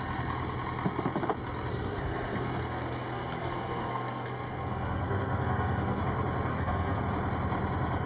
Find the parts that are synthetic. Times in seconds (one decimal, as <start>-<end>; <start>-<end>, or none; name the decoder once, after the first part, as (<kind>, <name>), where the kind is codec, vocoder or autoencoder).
1.7-6.0 (codec, SNAC); 6.5-7.0